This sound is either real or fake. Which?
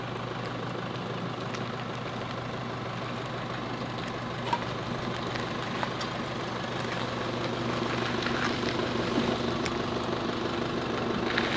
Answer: real